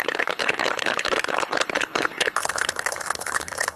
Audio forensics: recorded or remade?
remade